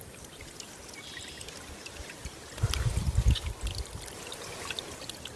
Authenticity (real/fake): real